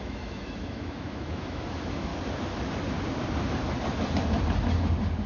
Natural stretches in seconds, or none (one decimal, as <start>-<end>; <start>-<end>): 2.1-5.3